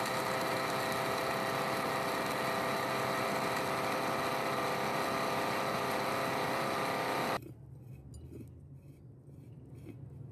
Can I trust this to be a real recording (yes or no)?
yes